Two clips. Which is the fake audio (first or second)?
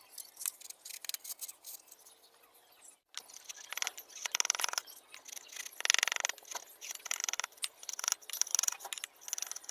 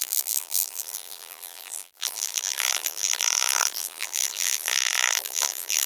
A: second